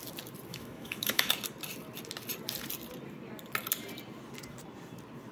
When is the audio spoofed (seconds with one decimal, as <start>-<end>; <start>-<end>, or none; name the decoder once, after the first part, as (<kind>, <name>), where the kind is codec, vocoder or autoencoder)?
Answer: 0.5-1.3 (autoencoder, DAC-VAE)

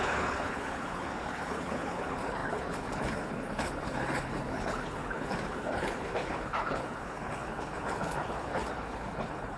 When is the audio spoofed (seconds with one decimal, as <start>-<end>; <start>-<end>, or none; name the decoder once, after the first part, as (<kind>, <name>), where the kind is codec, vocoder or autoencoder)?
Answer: 0.0-9.6 (codec, HILCodec)

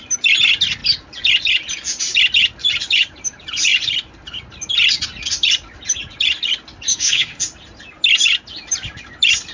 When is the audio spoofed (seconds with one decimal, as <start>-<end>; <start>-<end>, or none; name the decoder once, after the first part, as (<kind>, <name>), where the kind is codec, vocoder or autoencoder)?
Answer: 6.9-7.4 (autoencoder, DAC-VAE)

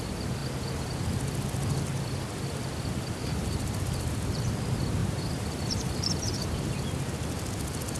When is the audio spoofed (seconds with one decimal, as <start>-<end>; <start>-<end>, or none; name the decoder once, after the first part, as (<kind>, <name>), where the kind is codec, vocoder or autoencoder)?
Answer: 3.2-3.8 (vocoder, BigVGAN v2); 5.0-6.5

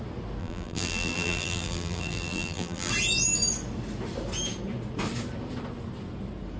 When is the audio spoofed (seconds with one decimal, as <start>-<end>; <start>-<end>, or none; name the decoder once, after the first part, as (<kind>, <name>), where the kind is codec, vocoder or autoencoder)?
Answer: 0.4-2.9 (vocoder, BigVGAN v2)